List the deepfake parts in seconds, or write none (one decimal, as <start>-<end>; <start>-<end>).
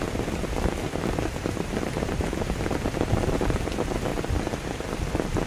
none